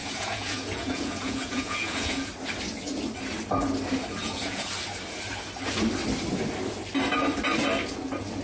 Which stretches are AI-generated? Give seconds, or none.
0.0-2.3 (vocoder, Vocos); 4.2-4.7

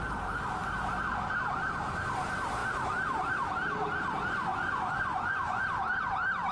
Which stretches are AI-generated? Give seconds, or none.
4.5-5.6 (vocoder, Vocos)

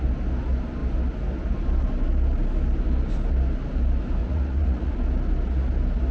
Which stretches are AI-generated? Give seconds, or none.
4.2-4.9 (vocoder, Vocos)

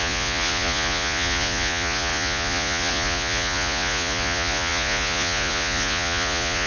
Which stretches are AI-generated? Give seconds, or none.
0.0-6.7 (vocoder, Vocos)

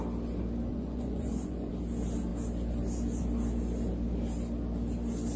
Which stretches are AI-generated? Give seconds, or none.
0.7-1.7 (vocoder, Vocos)

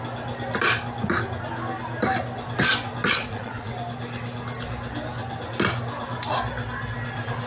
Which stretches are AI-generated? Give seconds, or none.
3.2-3.7 (vocoder, Vocos)

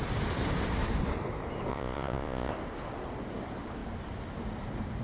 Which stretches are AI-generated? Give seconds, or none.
1.7-2.5 (vocoder, Vocos)

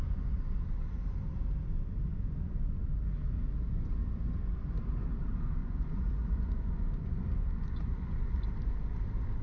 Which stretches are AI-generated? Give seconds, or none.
5.6-8.4 (vocoder, Vocos)